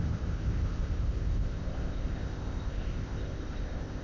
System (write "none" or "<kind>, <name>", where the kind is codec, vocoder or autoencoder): codec, ZipCodec